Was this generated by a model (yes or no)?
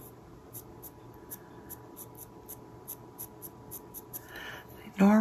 no